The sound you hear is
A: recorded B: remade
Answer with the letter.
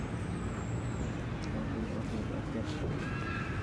A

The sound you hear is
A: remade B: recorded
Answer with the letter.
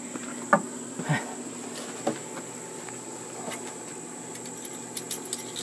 B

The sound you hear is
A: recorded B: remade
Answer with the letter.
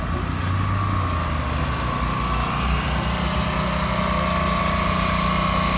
A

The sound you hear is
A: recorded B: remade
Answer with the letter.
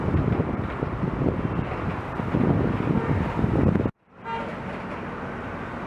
B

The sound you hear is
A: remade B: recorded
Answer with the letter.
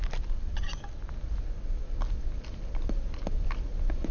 B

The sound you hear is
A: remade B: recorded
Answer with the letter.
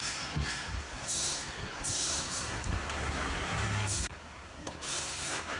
A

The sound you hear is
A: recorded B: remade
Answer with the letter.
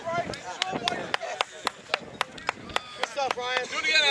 A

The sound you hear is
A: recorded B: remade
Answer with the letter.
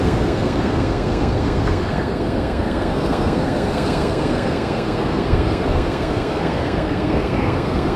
B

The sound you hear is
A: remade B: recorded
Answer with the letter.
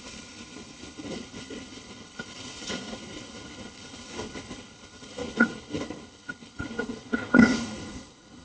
A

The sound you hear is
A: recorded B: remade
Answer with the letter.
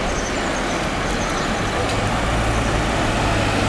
A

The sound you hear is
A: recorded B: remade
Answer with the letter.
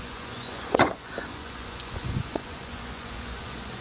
B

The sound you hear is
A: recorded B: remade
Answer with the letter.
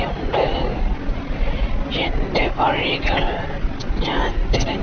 A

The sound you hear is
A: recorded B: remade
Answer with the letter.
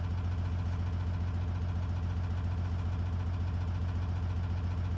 A